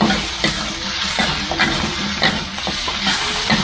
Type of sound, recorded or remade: recorded